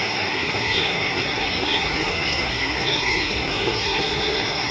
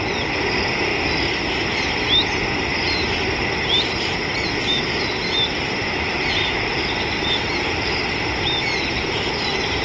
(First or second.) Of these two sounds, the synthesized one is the first